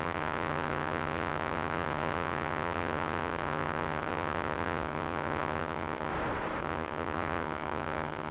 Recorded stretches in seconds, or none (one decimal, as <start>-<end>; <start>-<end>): 6.1-6.6